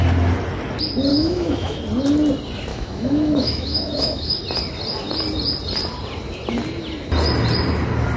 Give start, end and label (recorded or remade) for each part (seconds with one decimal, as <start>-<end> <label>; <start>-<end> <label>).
0.0-1.1 recorded; 1.1-1.8 remade; 1.8-2.7 recorded; 2.7-4.4 remade; 4.4-8.2 recorded